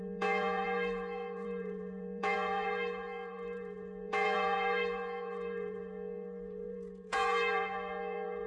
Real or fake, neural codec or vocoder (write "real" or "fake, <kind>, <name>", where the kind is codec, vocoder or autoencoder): fake, vocoder, Vocos